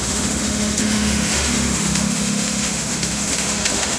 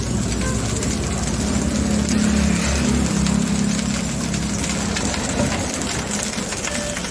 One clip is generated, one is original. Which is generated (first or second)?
first